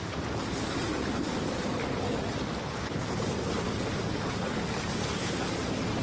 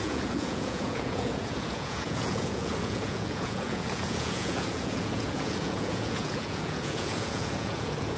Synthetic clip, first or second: second